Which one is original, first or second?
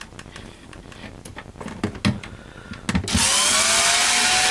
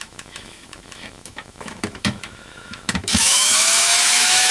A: first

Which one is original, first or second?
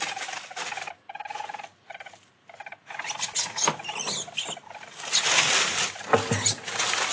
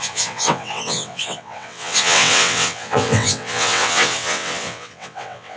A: first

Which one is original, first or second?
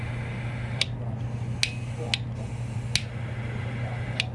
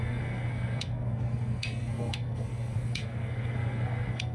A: first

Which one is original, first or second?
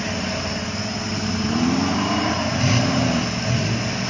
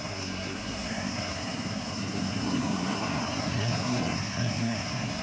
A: first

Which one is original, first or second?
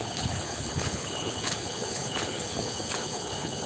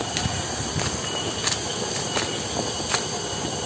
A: second